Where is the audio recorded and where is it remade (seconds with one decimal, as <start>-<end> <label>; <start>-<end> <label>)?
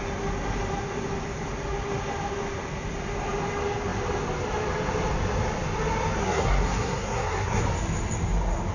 0.0-6.2 recorded; 6.2-7.6 remade; 7.6-8.7 recorded